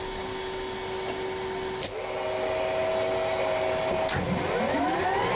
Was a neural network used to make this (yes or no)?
no